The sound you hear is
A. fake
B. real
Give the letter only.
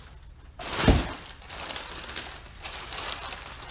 A